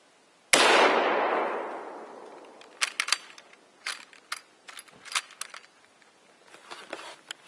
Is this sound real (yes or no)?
yes